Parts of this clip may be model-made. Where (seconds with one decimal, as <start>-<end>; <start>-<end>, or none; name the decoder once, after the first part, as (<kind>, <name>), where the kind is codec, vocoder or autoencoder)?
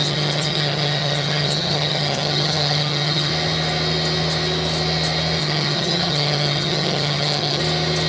0.0-3.3 (vocoder, HiFi-GAN); 5.4-7.6